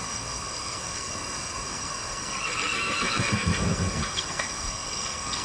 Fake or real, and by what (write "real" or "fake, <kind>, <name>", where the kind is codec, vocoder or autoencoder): fake, codec, SNAC